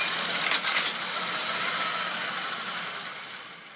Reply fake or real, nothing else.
real